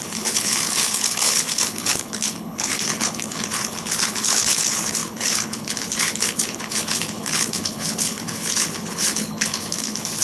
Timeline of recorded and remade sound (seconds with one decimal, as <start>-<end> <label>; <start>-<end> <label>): 0.0-10.2 remade